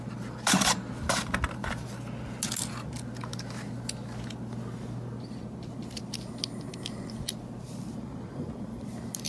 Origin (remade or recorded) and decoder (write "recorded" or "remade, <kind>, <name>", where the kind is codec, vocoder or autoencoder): recorded